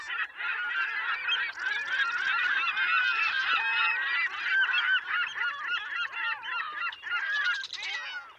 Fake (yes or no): no